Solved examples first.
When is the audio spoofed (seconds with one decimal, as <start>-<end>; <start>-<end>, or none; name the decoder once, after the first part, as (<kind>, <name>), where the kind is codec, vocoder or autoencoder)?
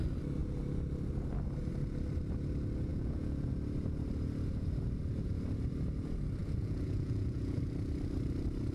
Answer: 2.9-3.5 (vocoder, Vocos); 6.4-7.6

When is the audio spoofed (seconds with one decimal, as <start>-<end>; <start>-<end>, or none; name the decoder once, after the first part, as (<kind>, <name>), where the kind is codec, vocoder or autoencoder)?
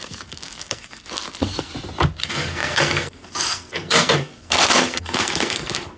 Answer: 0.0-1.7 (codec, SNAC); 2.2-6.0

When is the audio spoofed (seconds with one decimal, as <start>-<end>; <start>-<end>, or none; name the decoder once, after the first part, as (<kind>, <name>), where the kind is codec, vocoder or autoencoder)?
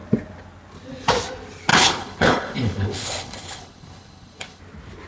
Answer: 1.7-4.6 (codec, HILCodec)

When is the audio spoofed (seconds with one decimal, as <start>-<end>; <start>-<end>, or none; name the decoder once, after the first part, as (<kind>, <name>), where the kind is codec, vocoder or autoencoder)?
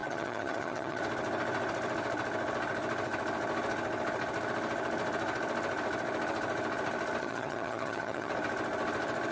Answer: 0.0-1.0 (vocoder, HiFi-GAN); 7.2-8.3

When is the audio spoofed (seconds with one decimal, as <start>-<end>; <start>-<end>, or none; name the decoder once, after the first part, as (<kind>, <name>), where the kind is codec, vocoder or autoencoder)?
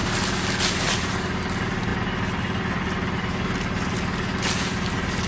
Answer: 0.7-1.9 (vocoder, BigVGAN v2)